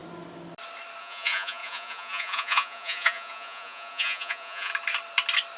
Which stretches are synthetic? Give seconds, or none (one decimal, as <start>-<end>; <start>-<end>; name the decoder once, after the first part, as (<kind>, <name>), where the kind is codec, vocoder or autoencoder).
1.0-4.7 (vocoder, Vocos)